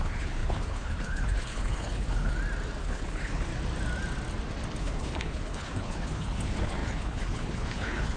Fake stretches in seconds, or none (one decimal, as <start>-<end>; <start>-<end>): 0.0-2.3; 2.8-3.5; 4.8-8.2